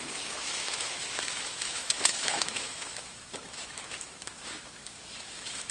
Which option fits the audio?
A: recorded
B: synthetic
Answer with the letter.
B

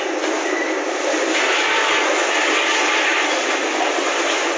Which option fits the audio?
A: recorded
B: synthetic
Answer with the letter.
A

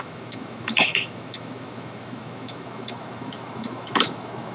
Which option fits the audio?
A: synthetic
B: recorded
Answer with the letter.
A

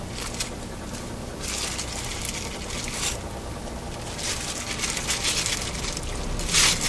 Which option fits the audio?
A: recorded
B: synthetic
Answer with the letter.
A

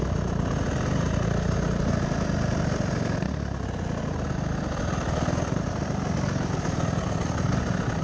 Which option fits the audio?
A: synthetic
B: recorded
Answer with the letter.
B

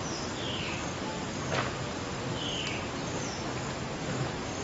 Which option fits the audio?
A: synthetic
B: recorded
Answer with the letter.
B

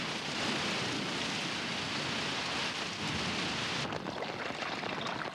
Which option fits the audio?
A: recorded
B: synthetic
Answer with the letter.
A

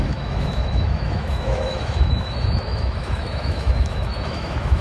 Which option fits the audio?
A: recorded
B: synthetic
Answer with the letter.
B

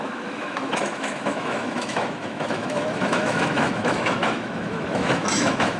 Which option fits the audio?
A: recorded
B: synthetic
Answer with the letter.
B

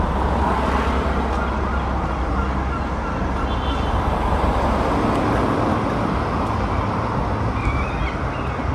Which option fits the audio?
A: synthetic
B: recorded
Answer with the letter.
B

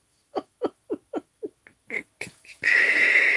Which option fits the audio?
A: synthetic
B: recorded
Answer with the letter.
A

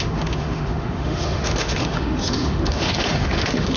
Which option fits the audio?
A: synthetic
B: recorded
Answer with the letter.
A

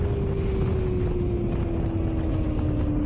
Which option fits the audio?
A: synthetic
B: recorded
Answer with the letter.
B